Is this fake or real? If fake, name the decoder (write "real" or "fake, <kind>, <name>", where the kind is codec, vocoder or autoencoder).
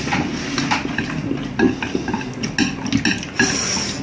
real